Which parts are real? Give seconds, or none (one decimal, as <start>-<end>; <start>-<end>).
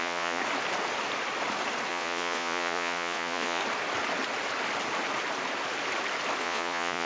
0.4-1.9; 3.6-6.4